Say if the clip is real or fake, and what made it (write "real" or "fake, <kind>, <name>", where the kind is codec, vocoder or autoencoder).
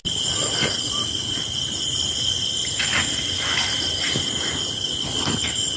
real